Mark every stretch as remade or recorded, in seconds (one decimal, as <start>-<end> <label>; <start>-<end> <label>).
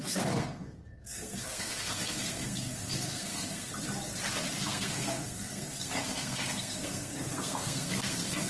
0.0-3.7 remade; 3.7-4.6 recorded; 4.6-8.5 remade